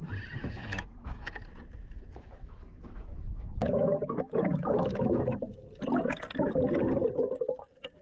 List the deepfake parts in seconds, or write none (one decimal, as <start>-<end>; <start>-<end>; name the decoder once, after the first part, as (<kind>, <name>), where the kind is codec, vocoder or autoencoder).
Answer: 0.4-1.3 (autoencoder, DAC-VAE); 1.9-5.5